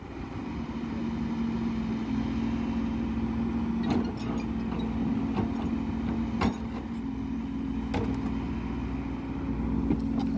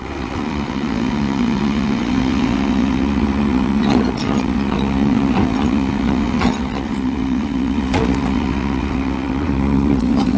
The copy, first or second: second